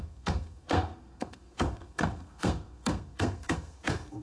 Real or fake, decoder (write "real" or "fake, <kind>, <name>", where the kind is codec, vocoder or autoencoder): fake, codec, SNAC